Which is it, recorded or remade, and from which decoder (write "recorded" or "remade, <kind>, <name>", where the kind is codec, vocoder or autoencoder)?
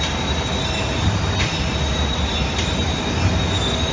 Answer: recorded